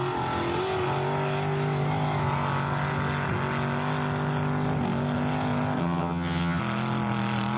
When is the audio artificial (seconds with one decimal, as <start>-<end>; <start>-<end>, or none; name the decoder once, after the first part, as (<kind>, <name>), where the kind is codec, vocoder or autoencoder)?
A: 5.8-6.6 (vocoder, HiFi-GAN)